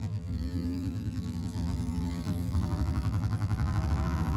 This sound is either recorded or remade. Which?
remade